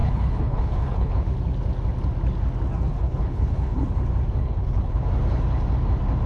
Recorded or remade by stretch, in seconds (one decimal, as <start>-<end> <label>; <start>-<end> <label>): 0.0-1.1 remade; 1.1-2.9 recorded; 2.9-3.8 remade; 3.8-4.4 recorded; 4.4-5.0 remade; 5.0-6.3 recorded